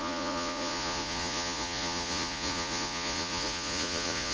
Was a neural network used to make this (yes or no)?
yes